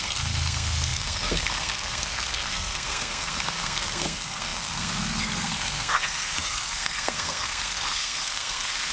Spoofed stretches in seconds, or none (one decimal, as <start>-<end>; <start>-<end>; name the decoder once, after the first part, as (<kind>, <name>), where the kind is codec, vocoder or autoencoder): 0.0-8.9 (codec, SNAC)